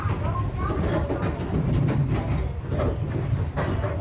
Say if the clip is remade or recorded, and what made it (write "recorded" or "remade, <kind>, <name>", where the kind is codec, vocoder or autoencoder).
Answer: recorded